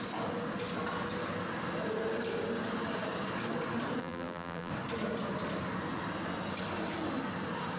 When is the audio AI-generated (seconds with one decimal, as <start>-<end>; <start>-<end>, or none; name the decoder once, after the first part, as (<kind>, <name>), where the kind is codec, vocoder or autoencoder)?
4.0-4.7 (vocoder, BigVGAN v2)